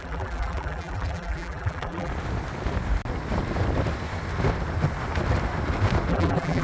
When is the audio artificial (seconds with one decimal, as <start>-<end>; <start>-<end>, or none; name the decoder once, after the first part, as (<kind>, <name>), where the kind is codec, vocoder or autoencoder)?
0.0-2.1 (vocoder, BigVGAN v2); 6.1-6.6

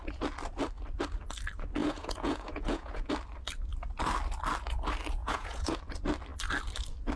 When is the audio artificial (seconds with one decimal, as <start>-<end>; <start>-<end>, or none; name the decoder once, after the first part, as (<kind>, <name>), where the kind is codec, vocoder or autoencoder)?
1.8-3.1 (vocoder, Vocos); 5.2-5.8

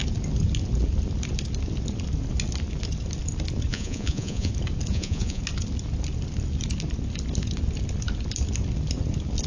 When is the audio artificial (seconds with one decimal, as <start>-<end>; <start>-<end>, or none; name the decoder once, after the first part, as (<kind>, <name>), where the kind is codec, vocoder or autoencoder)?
3.7-4.5 (vocoder, Vocos); 4.9-5.4

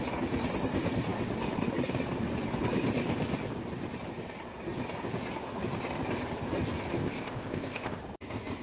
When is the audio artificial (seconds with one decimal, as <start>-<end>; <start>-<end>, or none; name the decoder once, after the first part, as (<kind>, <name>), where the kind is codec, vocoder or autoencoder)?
7.0-8.0 (codec, ZipCodec)